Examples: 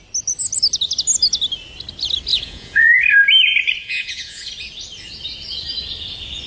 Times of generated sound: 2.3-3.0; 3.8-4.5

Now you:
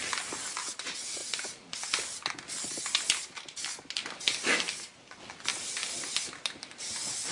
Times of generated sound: none